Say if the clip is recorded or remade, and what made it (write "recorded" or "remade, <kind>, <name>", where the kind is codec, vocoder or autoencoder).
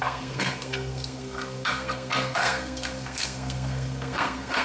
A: remade, codec, SNAC